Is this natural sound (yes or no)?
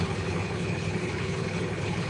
no